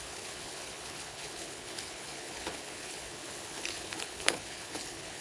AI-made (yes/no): yes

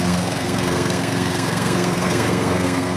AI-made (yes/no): yes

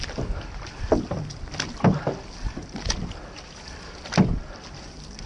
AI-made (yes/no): no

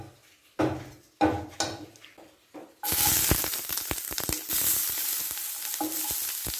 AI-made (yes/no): no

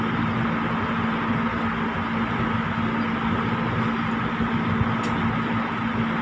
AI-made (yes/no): no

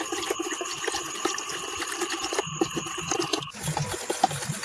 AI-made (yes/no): no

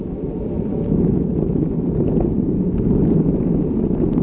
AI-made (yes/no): no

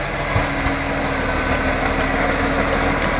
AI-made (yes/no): no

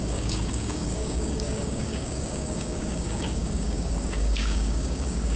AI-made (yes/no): yes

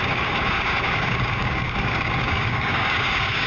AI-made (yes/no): yes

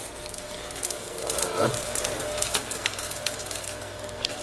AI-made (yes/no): yes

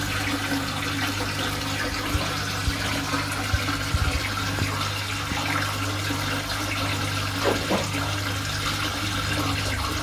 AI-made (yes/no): no